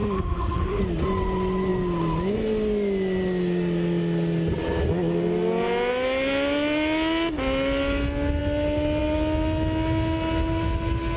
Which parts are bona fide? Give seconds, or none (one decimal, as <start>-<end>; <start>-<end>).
0.8-11.2